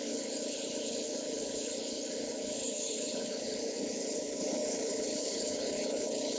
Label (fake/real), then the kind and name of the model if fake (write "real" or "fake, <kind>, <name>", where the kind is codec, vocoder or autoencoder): fake, codec, HILCodec